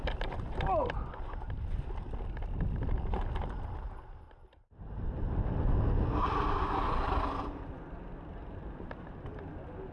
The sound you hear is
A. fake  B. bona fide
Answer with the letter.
B